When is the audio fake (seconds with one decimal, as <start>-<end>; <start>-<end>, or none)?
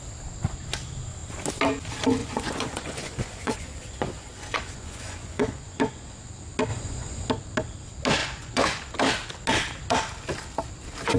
2.2-6.2; 6.7-7.3; 8.2-8.9